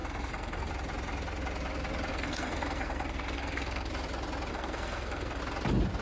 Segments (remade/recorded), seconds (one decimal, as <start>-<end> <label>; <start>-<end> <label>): 0.0-0.7 remade; 0.7-2.1 recorded; 2.1-3.9 remade; 3.9-4.5 recorded; 4.5-5.4 remade; 5.4-6.0 recorded